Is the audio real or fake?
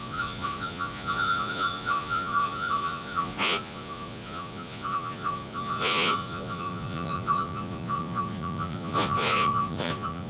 fake